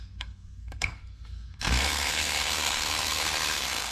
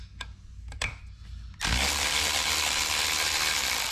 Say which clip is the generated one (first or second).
first